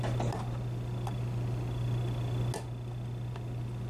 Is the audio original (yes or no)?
yes